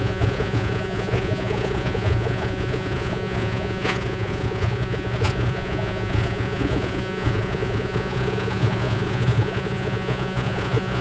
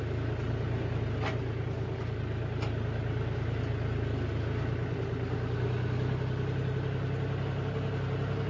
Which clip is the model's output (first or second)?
first